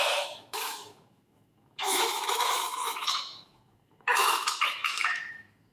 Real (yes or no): no